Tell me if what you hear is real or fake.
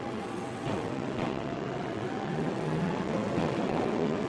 fake